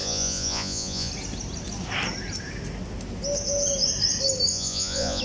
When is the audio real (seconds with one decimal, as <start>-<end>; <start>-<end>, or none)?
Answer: 1.1-4.5